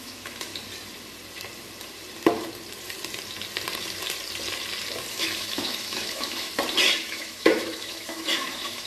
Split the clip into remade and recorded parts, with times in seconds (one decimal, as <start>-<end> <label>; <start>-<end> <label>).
0.0-0.5 remade; 0.5-5.1 recorded; 5.1-6.5 remade; 6.5-7.0 recorded; 7.0-8.9 remade